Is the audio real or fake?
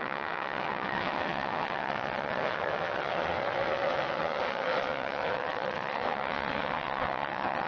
fake